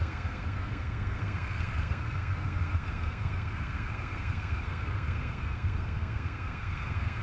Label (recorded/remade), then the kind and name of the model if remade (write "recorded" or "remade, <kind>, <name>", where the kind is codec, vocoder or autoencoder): remade, codec, SNAC